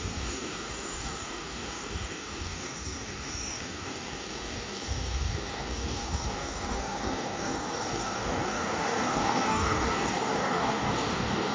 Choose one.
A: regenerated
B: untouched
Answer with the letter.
A